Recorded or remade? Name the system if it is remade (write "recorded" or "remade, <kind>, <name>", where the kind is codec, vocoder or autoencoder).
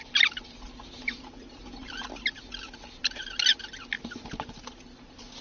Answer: recorded